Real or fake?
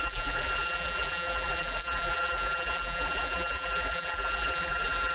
fake